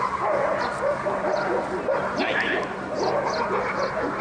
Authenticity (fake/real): real